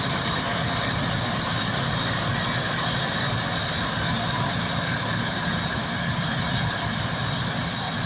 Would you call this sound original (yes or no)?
yes